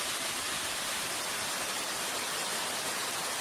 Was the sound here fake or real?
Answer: real